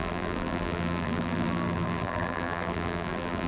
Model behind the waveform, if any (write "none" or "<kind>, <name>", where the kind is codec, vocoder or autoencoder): vocoder, BigVGAN v2